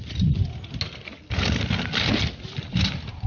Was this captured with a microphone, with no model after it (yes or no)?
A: yes